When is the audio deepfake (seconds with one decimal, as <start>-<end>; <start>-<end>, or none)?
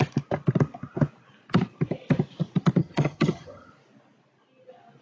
2.8-3.7